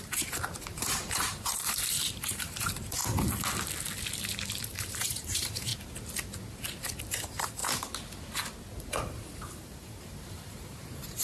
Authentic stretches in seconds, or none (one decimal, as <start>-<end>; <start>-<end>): 3.0-4.8; 5.7-7.0; 7.6-8.9